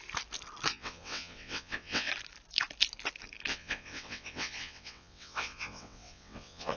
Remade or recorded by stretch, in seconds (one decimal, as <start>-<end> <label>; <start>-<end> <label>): 0.0-0.7 recorded; 0.7-2.1 remade; 2.1-3.5 recorded; 3.5-6.8 remade